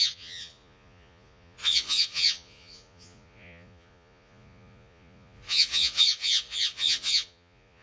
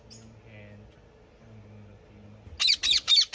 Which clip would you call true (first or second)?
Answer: second